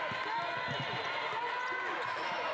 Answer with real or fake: real